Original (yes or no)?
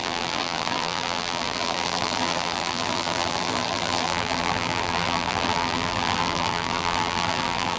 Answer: no